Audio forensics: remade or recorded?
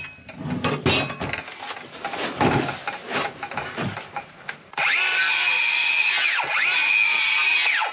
recorded